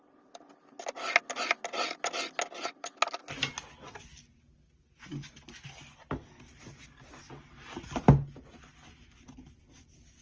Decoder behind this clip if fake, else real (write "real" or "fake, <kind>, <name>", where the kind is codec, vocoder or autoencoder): real